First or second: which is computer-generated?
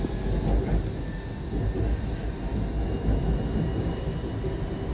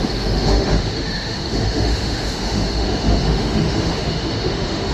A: second